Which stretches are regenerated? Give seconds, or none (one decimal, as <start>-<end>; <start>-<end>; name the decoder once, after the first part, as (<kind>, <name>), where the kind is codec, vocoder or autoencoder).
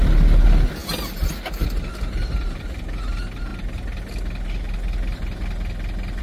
none